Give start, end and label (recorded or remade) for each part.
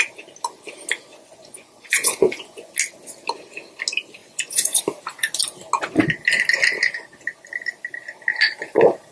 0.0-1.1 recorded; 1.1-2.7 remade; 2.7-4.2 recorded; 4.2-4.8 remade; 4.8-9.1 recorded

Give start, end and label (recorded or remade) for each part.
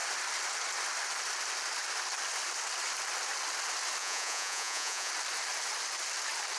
0.0-4.0 recorded; 4.0-5.1 remade; 5.1-6.6 recorded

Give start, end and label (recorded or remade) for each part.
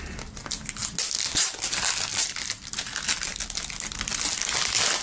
0.0-5.0 recorded